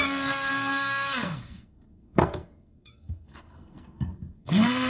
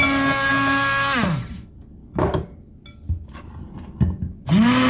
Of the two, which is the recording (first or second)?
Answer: second